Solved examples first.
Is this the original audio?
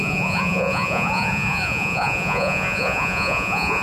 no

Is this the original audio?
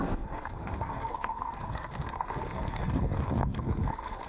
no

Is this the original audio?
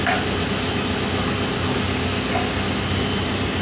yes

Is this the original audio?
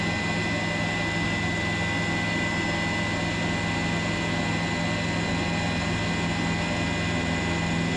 yes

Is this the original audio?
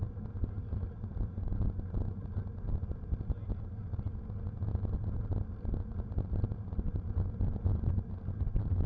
yes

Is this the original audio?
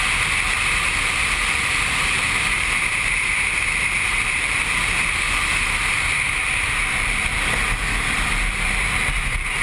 yes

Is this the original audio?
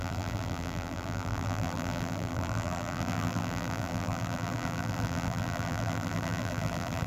no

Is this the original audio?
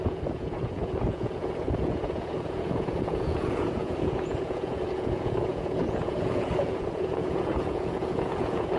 no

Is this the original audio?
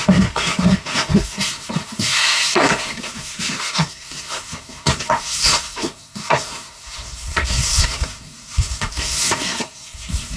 no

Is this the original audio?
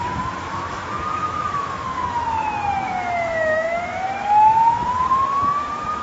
no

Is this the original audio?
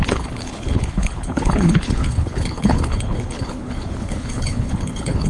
no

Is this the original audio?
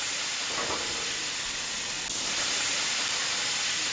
yes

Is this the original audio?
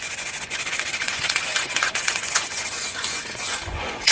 no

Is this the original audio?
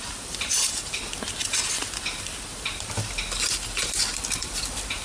yes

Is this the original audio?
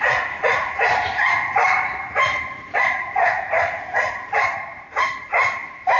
no